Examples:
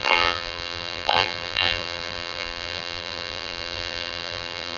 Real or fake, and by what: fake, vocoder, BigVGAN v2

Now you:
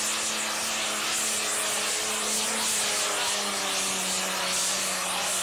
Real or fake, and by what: real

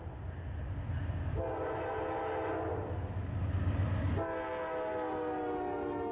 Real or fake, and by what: real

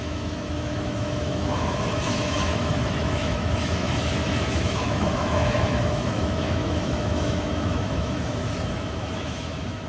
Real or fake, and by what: fake, autoencoder, DAC-VAE